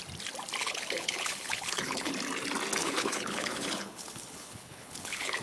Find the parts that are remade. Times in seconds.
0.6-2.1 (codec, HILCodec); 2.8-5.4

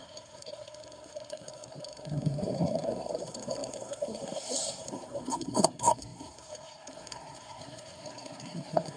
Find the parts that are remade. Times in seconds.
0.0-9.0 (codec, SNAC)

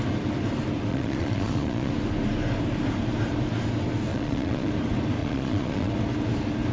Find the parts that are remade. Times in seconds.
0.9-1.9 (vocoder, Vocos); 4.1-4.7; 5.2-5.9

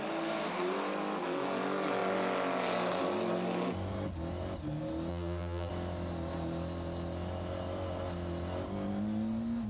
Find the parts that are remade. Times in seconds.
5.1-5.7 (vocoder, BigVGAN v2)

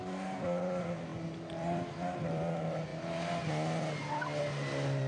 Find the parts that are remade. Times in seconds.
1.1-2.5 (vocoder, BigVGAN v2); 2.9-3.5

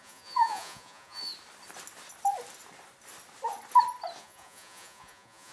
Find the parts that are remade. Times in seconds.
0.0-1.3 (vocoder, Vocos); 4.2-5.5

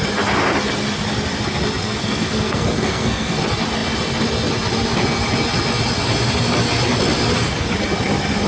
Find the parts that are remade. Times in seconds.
1.8-3.4 (codec, SNAC)